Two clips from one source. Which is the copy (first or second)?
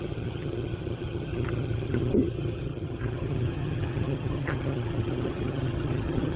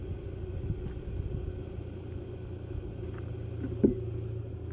first